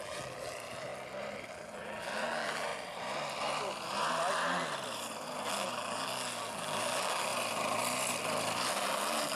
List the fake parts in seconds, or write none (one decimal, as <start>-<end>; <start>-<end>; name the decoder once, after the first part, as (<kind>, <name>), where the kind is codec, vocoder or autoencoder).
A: 0.0-0.9 (vocoder, BigVGAN v2); 1.5-2.7; 5.5-7.3; 8.7-9.4

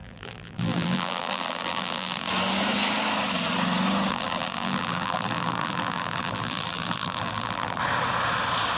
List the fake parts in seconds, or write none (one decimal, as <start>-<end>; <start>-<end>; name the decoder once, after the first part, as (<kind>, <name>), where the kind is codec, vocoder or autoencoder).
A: 0.0-2.3 (vocoder, BigVGAN v2); 4.1-7.8

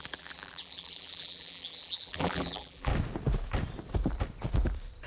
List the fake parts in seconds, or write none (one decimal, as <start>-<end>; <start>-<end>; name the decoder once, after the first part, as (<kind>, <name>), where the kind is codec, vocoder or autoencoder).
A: 0.0-2.9 (vocoder, BigVGAN v2)

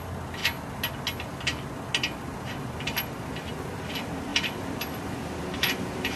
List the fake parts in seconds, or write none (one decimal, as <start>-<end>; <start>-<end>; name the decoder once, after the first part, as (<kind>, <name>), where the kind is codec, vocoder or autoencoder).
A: none

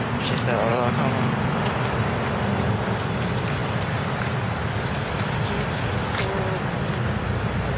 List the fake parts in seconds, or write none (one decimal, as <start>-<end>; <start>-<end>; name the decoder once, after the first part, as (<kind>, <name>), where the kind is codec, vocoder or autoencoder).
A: none

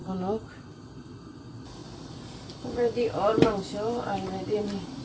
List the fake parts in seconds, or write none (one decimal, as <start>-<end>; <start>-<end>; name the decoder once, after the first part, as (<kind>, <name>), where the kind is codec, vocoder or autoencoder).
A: 1.8-5.0 (vocoder, BigVGAN v2)